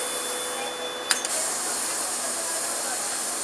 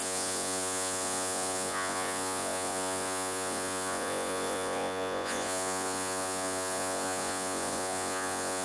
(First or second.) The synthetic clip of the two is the second